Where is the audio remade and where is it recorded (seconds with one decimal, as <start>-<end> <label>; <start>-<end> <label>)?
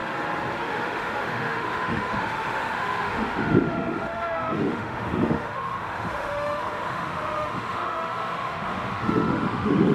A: 0.0-0.6 recorded; 0.6-9.9 remade